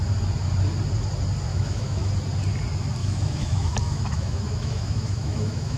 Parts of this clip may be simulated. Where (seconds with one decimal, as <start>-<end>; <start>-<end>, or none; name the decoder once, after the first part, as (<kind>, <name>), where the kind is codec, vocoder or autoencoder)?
1.5-2.1 (autoencoder, DAC-VAE); 3.0-5.8